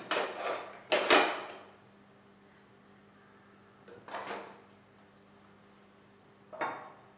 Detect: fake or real real